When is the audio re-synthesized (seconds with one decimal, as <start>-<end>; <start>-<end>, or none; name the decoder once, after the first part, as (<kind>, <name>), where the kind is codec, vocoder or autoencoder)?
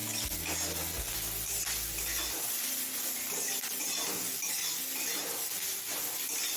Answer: none